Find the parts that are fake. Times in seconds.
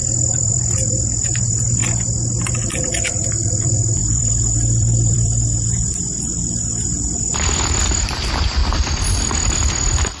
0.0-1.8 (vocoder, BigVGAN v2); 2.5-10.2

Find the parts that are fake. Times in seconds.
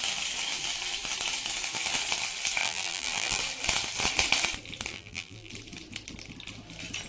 2.6-3.4 (vocoder, BigVGAN v2); 4.9-5.5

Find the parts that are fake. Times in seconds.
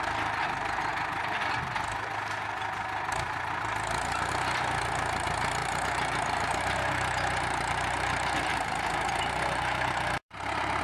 5.6-10.8 (vocoder, BigVGAN v2)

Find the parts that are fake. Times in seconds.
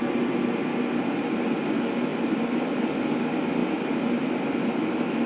2.1-2.9 (vocoder, BigVGAN v2)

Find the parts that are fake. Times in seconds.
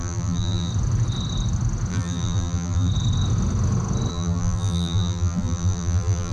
0.0-0.7 (vocoder, BigVGAN v2); 1.9-2.9; 4.1-6.3